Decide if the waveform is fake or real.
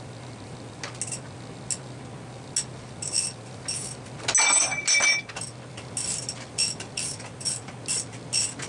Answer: real